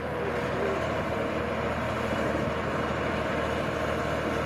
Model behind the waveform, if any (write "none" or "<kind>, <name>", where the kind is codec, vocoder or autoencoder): vocoder, BigVGAN v2